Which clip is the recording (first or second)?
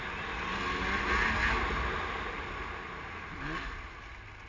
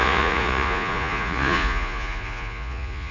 first